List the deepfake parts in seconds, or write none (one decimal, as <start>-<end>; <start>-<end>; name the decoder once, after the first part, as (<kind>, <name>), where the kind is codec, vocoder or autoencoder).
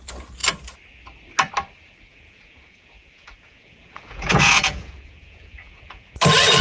2.1-6.1 (vocoder, Vocos)